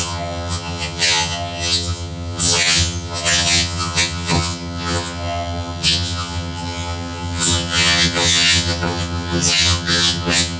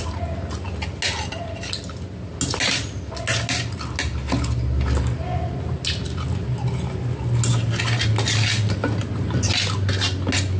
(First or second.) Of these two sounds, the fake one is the first